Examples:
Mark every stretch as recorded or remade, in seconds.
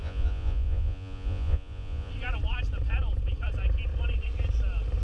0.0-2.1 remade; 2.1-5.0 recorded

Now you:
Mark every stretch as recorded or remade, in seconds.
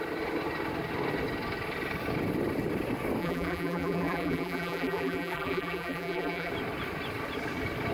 0.0-3.2 recorded; 3.2-6.5 remade; 6.5-7.9 recorded